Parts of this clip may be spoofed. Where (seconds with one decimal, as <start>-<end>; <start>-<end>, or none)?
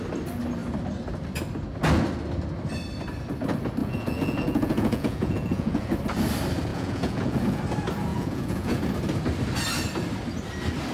3.8-5.9; 6.7-7.6; 8.1-8.8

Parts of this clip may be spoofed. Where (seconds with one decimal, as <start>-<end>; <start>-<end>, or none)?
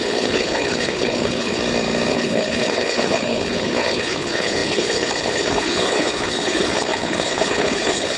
0.0-1.6; 2.1-8.2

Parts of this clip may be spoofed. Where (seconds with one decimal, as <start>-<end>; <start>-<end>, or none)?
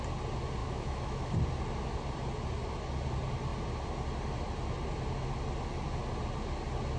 0.6-1.3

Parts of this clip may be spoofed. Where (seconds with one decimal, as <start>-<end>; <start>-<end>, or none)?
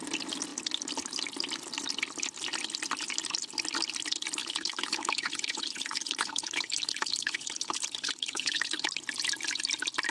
4.4-9.0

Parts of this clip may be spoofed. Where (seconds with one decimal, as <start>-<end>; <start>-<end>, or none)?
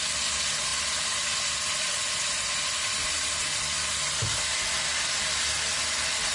none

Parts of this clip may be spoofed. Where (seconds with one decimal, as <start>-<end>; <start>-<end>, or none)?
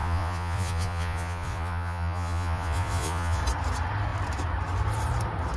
0.0-3.4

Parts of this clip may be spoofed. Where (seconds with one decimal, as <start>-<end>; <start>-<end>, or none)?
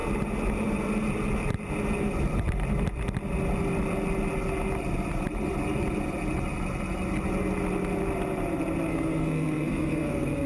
8.9-10.5